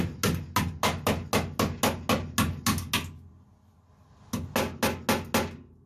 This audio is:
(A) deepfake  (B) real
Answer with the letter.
B